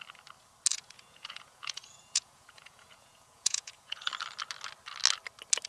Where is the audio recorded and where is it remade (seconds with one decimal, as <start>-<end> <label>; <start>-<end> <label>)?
0.0-0.7 recorded; 0.7-4.1 remade; 4.1-5.7 recorded